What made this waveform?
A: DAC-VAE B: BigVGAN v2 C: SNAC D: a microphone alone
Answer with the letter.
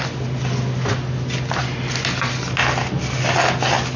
D